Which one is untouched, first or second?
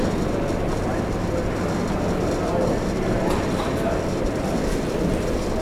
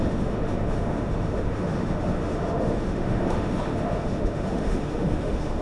first